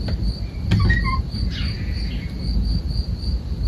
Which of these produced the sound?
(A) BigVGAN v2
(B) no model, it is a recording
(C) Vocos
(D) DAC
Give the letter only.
B